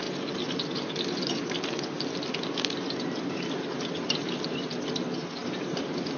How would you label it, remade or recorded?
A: recorded